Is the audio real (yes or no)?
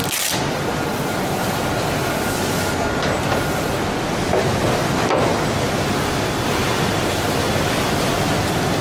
yes